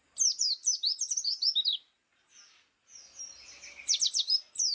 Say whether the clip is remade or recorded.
recorded